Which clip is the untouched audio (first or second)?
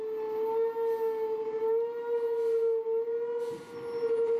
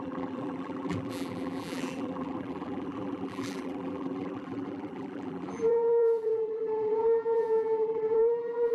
first